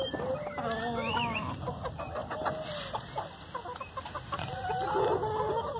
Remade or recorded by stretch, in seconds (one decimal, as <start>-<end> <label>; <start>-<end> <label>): 0.0-5.8 recorded